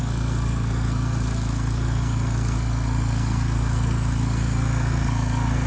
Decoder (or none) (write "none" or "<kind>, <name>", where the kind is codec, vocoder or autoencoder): codec, SNAC